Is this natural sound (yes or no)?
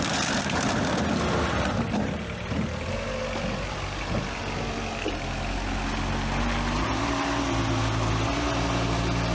yes